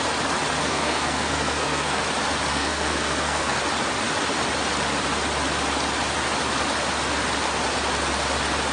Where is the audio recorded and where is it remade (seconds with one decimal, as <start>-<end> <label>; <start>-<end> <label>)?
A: 0.0-0.6 recorded; 0.6-2.0 remade; 2.0-2.5 recorded; 2.5-3.6 remade; 3.6-8.7 recorded